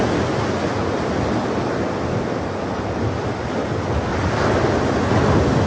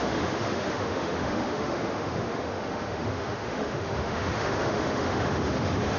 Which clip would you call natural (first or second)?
first